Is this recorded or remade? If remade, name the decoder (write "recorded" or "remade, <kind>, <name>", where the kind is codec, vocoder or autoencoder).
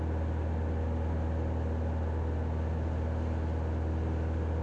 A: recorded